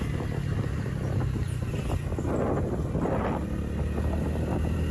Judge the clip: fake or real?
real